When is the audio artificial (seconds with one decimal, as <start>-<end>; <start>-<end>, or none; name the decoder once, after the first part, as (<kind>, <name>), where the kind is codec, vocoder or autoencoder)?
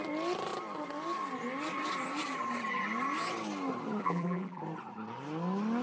4.0-4.6 (vocoder, BigVGAN v2)